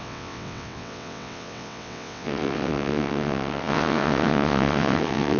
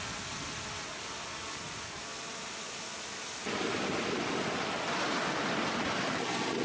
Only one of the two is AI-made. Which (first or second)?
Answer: first